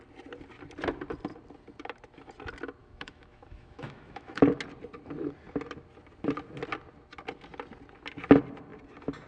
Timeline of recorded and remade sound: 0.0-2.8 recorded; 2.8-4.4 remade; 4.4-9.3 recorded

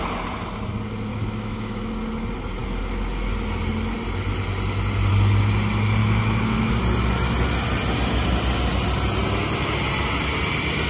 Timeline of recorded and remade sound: 0.0-1.1 recorded; 1.1-1.9 remade; 1.9-6.0 recorded; 6.0-6.7 remade; 6.7-10.9 recorded

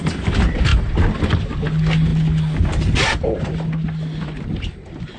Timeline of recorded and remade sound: 0.0-5.2 recorded

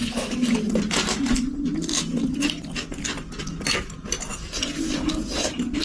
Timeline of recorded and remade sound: 0.0-5.8 recorded

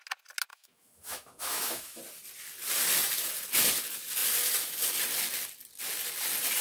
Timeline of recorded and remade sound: 0.0-0.5 recorded; 0.5-2.0 remade; 2.0-6.6 recorded

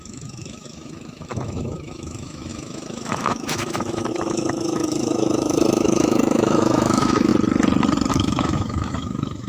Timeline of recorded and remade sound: 0.0-7.3 remade; 7.3-8.1 recorded; 8.1-9.5 remade